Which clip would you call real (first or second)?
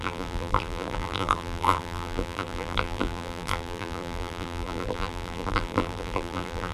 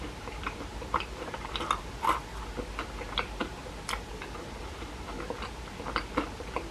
second